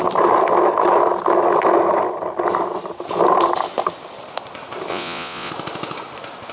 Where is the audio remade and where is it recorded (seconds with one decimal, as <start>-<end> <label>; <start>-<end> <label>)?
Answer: 0.0-4.9 recorded; 4.9-5.5 remade; 5.5-6.5 recorded